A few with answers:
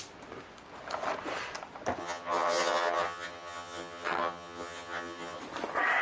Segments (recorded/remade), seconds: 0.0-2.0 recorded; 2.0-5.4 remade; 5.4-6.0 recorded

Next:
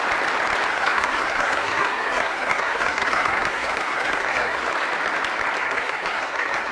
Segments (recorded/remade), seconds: 0.0-0.7 recorded; 0.7-4.7 remade; 4.7-5.6 recorded; 5.6-6.7 remade

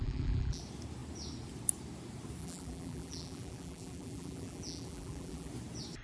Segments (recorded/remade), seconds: 0.0-0.6 remade; 0.6-2.4 recorded; 2.4-5.5 remade; 5.5-6.0 recorded

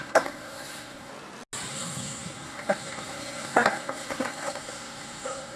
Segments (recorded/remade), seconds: 0.0-1.1 remade; 1.1-1.7 recorded; 1.7-5.6 remade

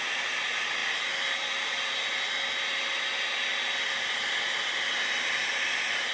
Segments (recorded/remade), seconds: 0.0-6.1 recorded

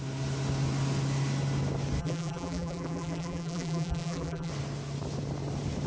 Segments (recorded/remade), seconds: 0.0-2.0 recorded; 2.0-4.5 remade; 4.5-5.9 recorded